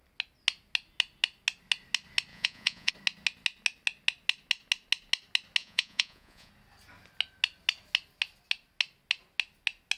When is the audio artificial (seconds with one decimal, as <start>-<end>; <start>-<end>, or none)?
2.3-2.9; 5.6-6.5